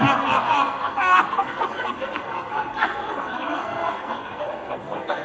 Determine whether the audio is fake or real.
fake